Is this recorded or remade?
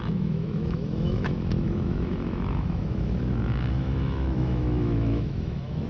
remade